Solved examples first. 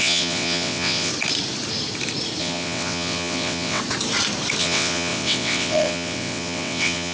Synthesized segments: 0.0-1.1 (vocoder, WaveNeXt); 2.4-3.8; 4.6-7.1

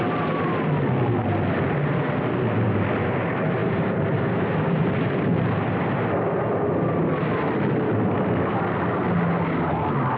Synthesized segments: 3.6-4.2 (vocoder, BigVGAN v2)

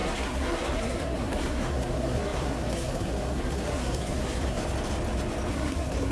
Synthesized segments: 0.0-4.6 (codec, SNAC); 5.5-6.1